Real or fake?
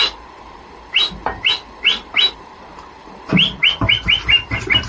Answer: real